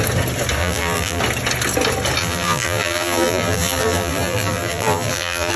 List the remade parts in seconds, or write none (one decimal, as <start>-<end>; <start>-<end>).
0.6-1.2; 2.2-5.6